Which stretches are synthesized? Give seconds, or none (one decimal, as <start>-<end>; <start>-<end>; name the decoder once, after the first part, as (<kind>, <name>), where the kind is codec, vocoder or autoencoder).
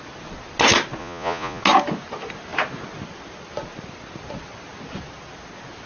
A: 1.0-1.6 (vocoder, Vocos)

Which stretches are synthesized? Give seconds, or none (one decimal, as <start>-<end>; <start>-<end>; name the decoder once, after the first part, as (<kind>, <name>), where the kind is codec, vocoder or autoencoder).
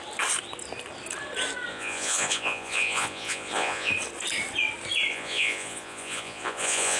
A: 1.7-3.9 (vocoder, Vocos); 5.1-7.0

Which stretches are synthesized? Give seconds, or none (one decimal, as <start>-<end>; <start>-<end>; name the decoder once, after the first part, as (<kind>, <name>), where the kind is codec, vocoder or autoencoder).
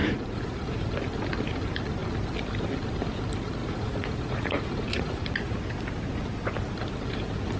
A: 0.0-1.0 (vocoder, Vocos); 3.6-5.6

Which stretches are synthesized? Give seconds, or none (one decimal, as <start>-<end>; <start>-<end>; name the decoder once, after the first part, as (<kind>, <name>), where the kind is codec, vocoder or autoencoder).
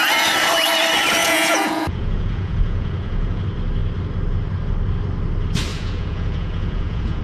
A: 1.2-3.4 (vocoder, Vocos); 5.7-7.2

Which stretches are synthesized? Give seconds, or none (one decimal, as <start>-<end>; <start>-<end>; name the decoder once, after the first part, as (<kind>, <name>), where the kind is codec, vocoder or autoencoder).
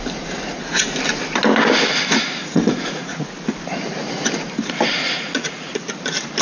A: 2.4-3.3 (vocoder, Vocos); 5.0-5.8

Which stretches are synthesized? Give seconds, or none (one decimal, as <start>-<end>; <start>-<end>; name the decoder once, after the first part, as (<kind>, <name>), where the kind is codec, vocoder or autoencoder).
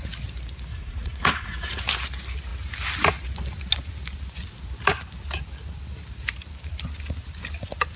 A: 0.7-1.8 (vocoder, Vocos)